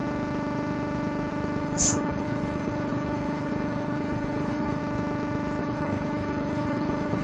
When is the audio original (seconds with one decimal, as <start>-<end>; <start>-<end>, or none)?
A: 0.0-1.6; 4.8-5.6